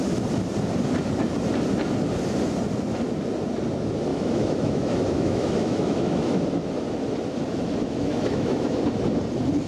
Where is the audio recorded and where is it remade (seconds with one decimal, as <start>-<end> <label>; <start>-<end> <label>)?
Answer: 0.0-4.1 recorded; 4.1-6.4 remade; 6.4-7.8 recorded; 7.8-8.8 remade; 8.8-9.7 recorded